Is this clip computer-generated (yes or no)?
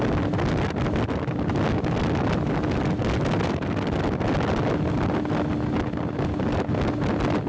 no